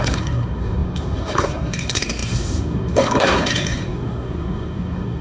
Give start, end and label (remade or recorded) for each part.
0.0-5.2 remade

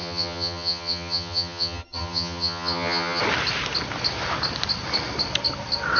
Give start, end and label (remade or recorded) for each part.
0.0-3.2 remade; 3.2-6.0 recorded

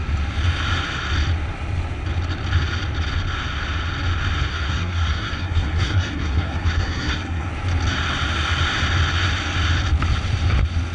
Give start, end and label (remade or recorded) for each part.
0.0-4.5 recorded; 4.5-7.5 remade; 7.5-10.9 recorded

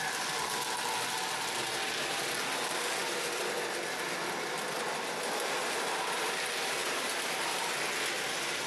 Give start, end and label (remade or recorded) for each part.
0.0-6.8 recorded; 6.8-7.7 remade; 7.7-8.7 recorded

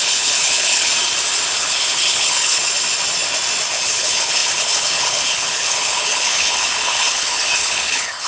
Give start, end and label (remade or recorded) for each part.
0.0-0.9 remade; 0.9-1.5 recorded; 1.5-2.6 remade; 2.6-3.7 recorded; 3.7-8.3 remade

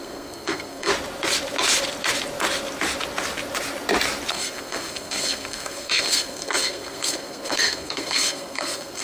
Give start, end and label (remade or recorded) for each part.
0.0-0.9 remade; 0.9-4.3 recorded; 4.3-9.0 remade

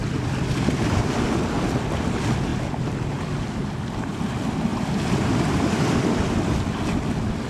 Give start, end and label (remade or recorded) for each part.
0.0-1.1 remade; 1.1-4.7 recorded; 4.7-6.0 remade; 6.0-7.5 recorded

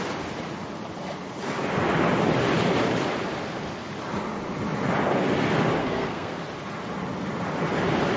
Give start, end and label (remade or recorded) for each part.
0.0-5.8 recorded; 5.8-6.4 remade; 6.4-8.2 recorded